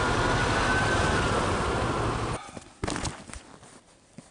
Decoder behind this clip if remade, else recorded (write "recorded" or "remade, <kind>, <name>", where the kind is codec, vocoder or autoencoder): recorded